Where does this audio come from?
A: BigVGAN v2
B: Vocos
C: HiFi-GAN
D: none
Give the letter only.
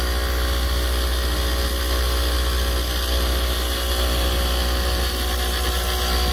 D